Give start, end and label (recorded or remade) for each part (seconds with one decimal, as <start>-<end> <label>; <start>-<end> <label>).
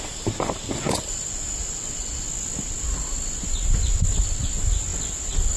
0.0-5.6 recorded